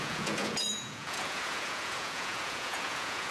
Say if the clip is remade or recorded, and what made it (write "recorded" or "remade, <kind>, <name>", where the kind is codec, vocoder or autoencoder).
remade, vocoder, Vocos